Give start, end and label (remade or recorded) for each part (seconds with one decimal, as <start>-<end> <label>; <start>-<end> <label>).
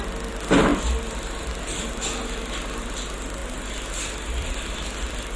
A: 0.0-5.4 recorded